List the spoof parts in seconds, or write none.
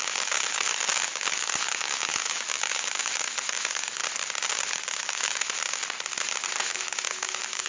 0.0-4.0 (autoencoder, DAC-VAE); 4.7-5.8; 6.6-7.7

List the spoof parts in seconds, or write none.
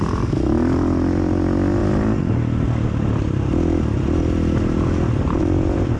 none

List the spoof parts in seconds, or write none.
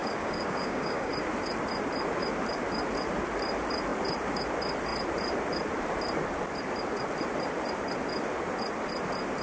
0.0-1.1 (codec, DAC)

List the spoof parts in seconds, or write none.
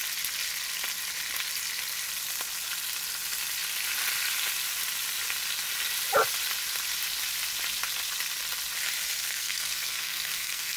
9.2-10.8 (codec, SNAC)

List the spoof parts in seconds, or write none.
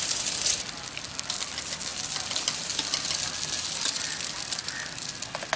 none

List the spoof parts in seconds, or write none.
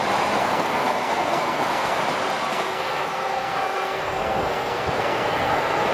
0.4-2.0 (codec, SNAC); 2.5-5.9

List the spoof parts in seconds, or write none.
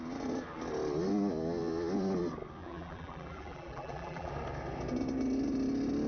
2.6-4.3 (vocoder, BigVGAN v2)